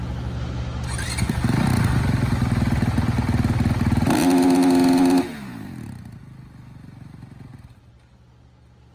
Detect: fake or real real